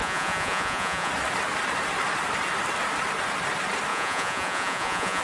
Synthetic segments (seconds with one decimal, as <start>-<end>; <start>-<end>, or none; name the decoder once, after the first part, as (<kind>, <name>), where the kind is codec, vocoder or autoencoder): 0.0-1.1 (vocoder, Vocos); 3.9-5.2